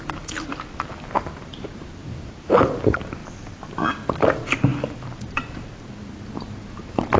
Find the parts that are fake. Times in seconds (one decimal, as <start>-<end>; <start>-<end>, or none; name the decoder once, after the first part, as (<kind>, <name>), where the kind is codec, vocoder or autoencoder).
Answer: 0.0-0.5 (vocoder, BigVGAN v2); 1.1-3.2; 4.3-7.2